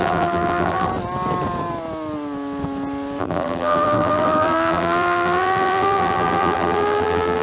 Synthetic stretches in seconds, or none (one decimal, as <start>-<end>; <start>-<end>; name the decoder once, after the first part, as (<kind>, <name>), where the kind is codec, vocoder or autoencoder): 0.0-0.9 (vocoder, BigVGAN v2); 3.2-7.4